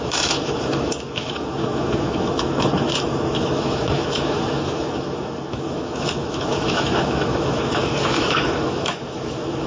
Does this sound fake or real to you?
fake